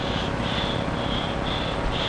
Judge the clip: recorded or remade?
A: recorded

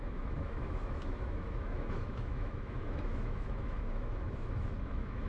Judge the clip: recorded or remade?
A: remade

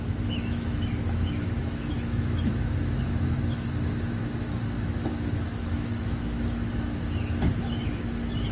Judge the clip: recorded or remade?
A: remade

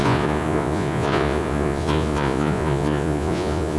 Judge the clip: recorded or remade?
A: remade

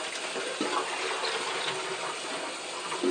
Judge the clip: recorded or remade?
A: recorded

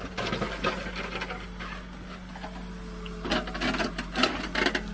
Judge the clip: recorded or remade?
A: recorded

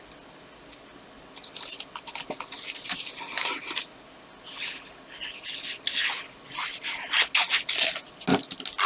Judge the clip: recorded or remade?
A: recorded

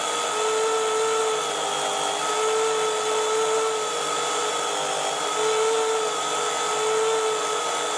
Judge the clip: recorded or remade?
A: recorded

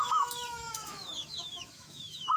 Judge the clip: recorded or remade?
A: remade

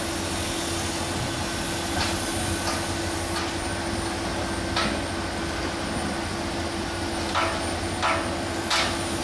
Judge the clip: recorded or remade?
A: recorded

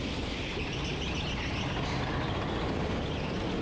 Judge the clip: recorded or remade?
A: recorded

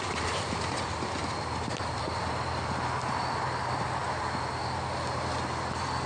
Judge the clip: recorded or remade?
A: recorded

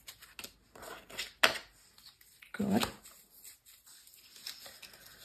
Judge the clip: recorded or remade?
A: recorded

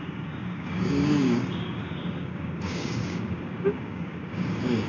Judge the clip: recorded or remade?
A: remade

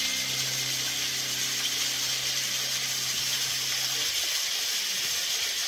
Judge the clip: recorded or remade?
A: recorded